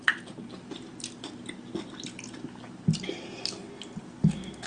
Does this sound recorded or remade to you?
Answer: recorded